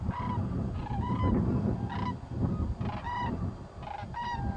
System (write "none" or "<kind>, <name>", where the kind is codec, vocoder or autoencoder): none